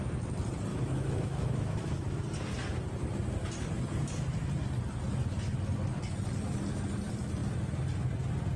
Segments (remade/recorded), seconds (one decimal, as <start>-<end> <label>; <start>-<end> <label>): 0.0-0.7 recorded; 0.7-2.2 remade; 2.2-8.6 recorded